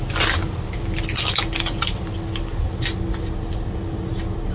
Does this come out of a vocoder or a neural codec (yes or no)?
no